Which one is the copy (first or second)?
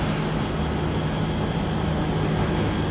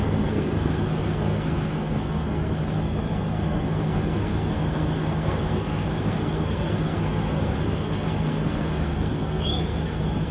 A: second